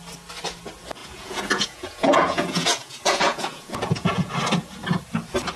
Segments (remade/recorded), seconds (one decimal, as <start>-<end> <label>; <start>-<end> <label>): 0.0-1.0 recorded; 1.0-4.3 remade; 4.3-5.6 recorded